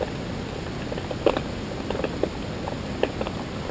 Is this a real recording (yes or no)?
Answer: yes